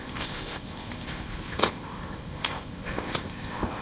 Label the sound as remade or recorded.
remade